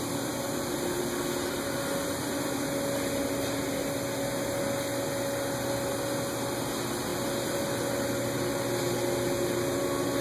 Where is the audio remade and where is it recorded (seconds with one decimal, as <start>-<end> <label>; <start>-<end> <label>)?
0.0-10.2 recorded